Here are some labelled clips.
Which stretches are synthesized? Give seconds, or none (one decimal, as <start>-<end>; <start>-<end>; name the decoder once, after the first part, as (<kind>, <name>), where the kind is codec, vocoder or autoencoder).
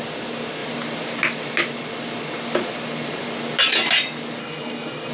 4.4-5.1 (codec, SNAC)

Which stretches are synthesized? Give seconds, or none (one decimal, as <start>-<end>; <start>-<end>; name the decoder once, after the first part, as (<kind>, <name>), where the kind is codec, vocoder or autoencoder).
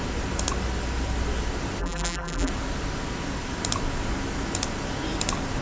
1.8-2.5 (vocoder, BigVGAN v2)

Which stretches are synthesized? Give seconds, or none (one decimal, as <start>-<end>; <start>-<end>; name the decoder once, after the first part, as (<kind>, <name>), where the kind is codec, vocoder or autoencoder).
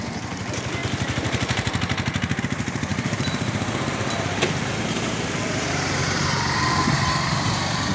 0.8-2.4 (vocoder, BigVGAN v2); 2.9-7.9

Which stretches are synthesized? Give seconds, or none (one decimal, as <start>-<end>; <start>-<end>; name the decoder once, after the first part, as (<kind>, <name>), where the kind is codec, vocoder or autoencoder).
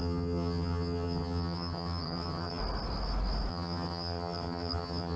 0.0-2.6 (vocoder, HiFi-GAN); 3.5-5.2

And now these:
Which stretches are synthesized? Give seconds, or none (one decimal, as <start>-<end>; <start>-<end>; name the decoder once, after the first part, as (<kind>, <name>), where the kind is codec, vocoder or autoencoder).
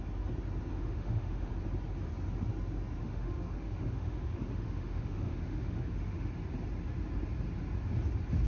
0.7-1.5 (autoencoder, DAC-VAE); 3.0-6.3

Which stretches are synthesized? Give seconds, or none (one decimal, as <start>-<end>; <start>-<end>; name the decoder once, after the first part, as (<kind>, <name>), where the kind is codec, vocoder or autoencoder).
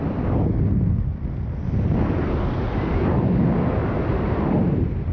3.8-5.1 (vocoder, BigVGAN v2)